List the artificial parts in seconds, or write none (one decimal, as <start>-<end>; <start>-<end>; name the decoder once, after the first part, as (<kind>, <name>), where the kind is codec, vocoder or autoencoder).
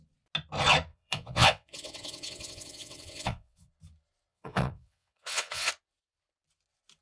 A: 0.9-3.7 (vocoder, WaveNeXt); 4.3-5.7